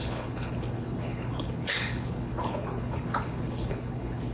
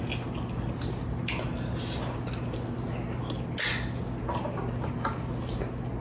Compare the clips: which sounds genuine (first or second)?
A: second